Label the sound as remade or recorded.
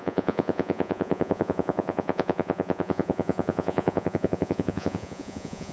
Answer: remade